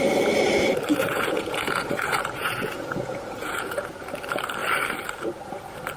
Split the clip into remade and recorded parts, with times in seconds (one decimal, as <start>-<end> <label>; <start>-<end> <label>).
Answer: 0.0-0.9 recorded; 0.9-4.0 remade; 4.0-6.0 recorded